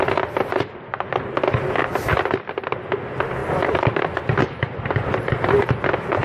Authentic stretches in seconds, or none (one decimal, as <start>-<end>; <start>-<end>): 0.0-4.4; 5.7-6.2